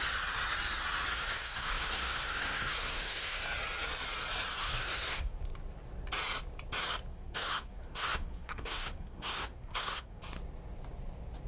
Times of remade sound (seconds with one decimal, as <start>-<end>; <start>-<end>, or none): 1.1-3.4; 4.6-5.4; 7.1-10.2